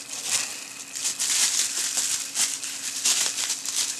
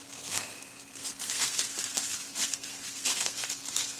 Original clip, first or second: first